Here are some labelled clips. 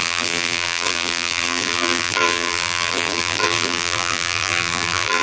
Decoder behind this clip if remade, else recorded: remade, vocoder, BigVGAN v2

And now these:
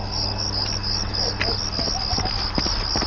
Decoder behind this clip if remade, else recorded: recorded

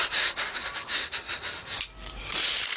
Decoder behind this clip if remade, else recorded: recorded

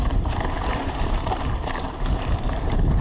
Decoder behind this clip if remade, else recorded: remade, vocoder, BigVGAN v2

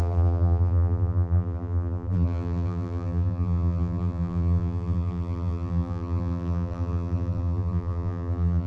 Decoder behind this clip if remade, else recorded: remade, vocoder, BigVGAN v2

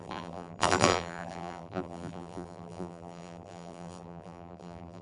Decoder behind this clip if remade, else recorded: remade, vocoder, BigVGAN v2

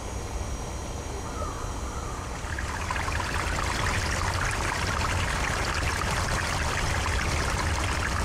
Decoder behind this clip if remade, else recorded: recorded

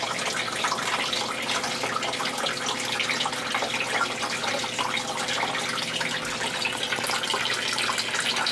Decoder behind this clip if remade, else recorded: recorded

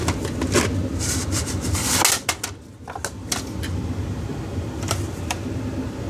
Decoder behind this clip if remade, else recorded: recorded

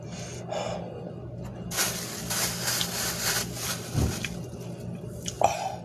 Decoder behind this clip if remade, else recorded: recorded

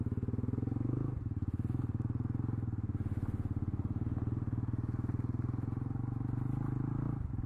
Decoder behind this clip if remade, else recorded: recorded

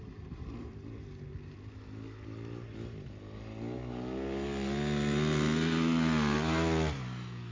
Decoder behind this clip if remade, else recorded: recorded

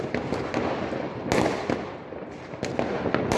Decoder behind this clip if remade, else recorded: recorded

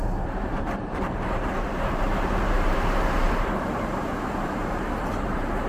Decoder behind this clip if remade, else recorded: remade, vocoder, BigVGAN v2